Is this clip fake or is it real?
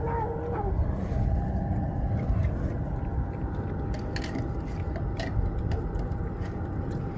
real